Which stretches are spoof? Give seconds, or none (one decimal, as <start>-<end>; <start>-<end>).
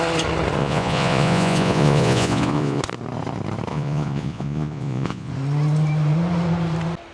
0.6-2.8; 3.7-5.3